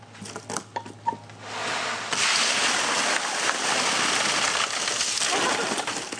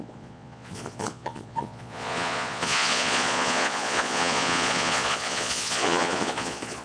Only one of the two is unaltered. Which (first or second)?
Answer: first